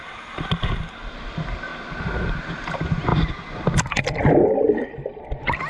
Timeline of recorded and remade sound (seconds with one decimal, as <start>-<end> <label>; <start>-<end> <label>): 0.0-1.7 remade; 1.7-2.4 recorded; 2.4-3.1 remade; 3.1-3.8 recorded; 3.8-5.7 remade